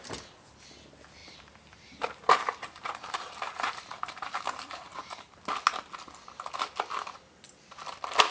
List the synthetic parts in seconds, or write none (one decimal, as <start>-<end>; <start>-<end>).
1.2-5.3